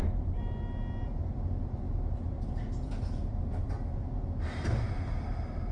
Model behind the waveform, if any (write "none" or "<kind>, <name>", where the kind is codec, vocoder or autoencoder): none